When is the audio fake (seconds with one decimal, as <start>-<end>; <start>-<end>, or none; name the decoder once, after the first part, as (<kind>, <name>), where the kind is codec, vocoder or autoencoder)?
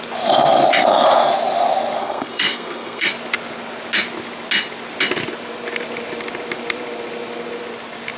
2.0-3.1 (codec, SNAC)